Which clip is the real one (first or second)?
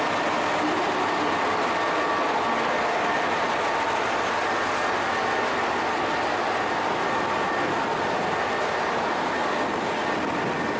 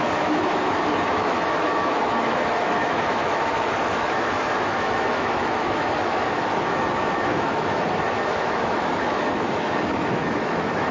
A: first